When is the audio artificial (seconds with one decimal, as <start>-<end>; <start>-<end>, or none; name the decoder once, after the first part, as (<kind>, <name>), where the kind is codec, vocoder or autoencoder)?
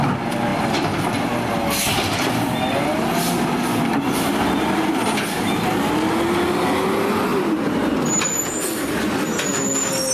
7.3-8.1 (vocoder, BigVGAN v2)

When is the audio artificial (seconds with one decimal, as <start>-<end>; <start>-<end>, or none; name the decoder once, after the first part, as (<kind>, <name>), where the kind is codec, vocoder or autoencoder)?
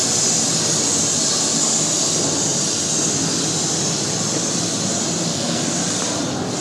5.3-5.8 (codec, SNAC)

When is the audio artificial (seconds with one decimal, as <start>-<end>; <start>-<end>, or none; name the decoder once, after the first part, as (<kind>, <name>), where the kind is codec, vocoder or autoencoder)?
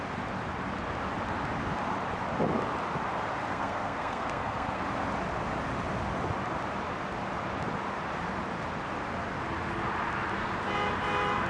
3.5-4.8 (codec, SNAC)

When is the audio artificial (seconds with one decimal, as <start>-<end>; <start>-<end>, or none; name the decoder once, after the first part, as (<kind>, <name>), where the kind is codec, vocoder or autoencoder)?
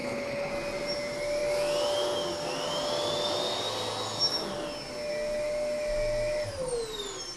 0.0-0.5 (codec, HILCodec)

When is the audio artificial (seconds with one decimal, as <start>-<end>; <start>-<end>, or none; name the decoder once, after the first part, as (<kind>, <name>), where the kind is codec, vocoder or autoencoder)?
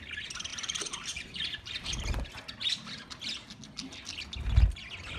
0.5-2.0 (vocoder, BigVGAN v2)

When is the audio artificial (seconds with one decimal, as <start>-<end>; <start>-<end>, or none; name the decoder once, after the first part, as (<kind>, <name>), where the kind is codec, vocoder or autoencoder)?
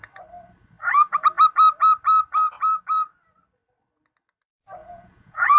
4.8-5.6 (vocoder, Vocos)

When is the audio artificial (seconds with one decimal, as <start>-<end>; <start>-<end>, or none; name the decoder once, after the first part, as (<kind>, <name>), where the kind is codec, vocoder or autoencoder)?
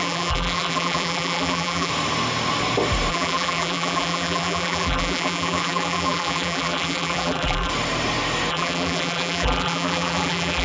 0.0-1.9 (vocoder, BigVGAN v2); 3.1-7.7; 8.5-10.6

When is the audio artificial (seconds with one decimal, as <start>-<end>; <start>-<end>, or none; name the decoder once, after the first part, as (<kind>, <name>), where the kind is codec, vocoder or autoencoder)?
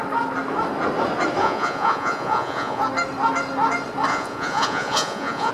1.4-2.8 (vocoder, Vocos); 4.1-5.5